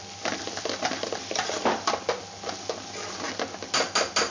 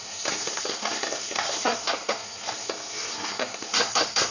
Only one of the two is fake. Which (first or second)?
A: second